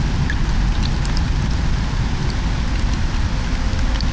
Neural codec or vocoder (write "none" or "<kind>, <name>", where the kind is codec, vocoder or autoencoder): none